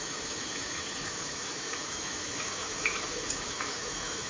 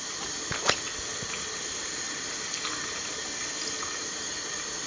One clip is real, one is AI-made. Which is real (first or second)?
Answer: second